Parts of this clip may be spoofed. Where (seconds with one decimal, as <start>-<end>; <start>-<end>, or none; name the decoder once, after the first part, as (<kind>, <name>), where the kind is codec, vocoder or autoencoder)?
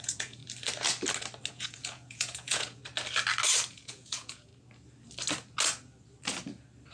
0.0-0.4 (vocoder, Vocos); 1.5-2.8; 3.7-4.5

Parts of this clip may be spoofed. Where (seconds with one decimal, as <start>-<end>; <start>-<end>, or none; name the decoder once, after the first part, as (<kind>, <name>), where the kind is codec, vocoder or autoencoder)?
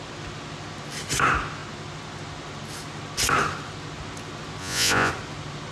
4.6-5.1 (vocoder, Vocos)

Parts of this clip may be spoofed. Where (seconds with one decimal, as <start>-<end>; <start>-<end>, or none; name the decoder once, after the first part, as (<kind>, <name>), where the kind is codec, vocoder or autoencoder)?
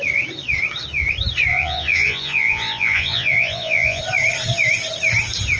1.5-4.0 (vocoder, Vocos)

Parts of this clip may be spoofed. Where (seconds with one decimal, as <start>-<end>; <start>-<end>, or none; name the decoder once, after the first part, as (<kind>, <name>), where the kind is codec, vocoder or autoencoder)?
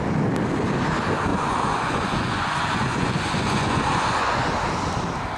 1.3-4.5 (vocoder, Vocos)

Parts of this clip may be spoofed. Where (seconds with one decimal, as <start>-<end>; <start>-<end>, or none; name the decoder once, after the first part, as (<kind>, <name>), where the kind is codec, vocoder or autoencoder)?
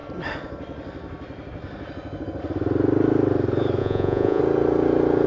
3.8-4.4 (vocoder, Vocos)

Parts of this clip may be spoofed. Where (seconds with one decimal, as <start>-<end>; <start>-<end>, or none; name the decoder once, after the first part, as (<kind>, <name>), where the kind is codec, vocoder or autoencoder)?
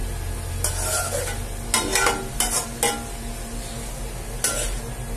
none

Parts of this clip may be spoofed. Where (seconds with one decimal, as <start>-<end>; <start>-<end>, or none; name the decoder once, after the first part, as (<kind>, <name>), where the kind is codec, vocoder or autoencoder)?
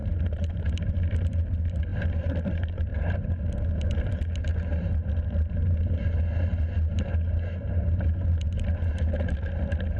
none